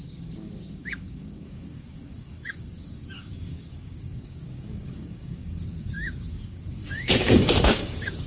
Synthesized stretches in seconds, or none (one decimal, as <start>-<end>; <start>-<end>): 0.0-8.3